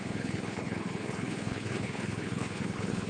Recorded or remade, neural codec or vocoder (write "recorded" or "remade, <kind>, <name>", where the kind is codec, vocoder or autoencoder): remade, codec, HILCodec